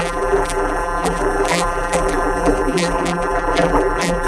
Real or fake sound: fake